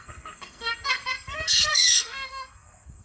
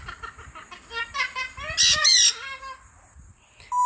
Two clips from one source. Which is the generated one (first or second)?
first